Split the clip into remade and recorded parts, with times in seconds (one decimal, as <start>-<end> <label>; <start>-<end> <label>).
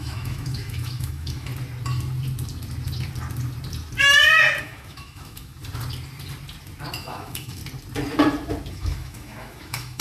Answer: 0.0-1.5 remade; 1.5-4.6 recorded; 4.6-5.6 remade; 5.6-7.0 recorded; 7.0-7.6 remade; 7.6-8.7 recorded; 8.7-10.0 remade